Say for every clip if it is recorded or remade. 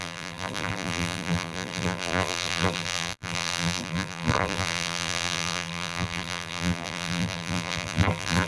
remade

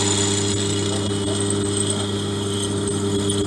recorded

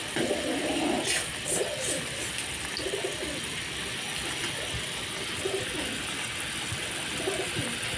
recorded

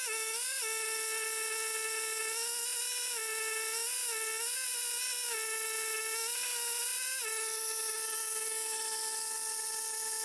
recorded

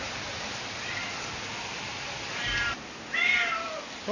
recorded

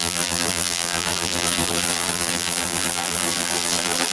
remade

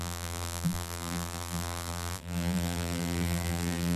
remade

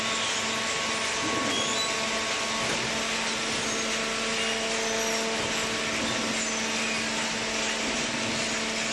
recorded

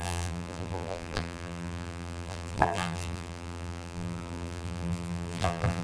remade